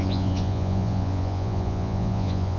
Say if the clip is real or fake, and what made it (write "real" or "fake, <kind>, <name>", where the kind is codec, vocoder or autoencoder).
fake, vocoder, Vocos